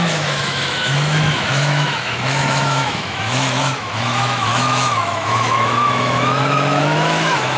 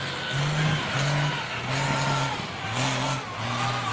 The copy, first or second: first